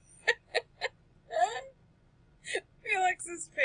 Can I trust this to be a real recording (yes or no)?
no